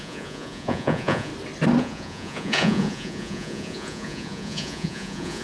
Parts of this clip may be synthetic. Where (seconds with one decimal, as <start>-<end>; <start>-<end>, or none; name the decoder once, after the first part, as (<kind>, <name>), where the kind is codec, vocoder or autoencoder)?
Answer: 0.0-1.3 (vocoder, Vocos); 1.8-5.4